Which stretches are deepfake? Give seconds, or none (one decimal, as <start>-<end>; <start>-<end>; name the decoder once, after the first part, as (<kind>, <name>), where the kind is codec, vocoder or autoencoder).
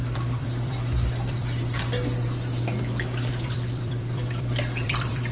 0.0-1.8 (vocoder, BigVGAN v2); 3.3-5.3